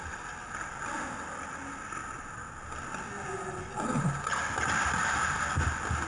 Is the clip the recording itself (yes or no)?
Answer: yes